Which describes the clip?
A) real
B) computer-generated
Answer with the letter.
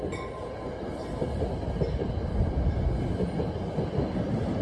A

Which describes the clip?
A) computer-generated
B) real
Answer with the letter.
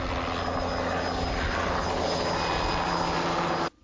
B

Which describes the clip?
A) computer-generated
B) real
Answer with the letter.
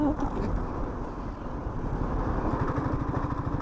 B